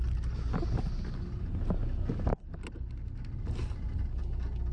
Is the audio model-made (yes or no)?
no